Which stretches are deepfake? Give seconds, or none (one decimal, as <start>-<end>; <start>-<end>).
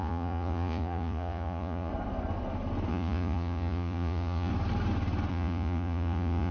0.0-1.9; 2.9-4.5; 5.3-6.5